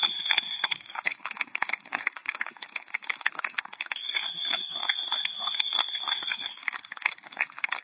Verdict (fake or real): fake